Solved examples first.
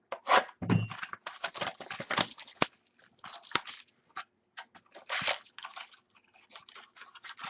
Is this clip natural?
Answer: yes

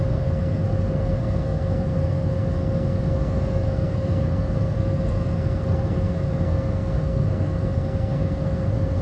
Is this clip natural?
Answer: no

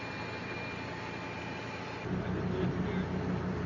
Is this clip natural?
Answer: yes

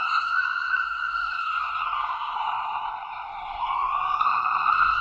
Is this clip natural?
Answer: no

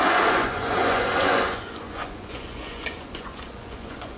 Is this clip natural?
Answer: no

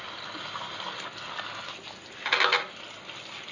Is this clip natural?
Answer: yes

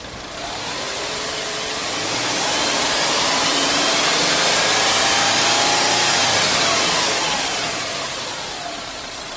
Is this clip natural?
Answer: no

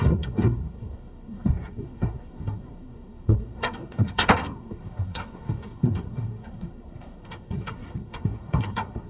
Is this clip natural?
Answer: no